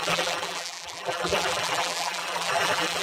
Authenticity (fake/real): fake